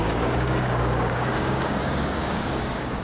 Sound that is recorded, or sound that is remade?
remade